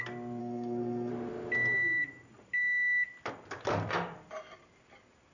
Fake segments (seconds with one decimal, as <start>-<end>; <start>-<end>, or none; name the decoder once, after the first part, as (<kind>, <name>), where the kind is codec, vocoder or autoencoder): 0.4-1.1 (codec, SNAC)